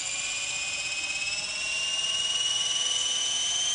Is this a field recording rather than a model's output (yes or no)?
yes